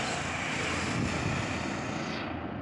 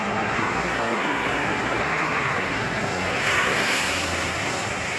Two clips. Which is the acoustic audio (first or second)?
first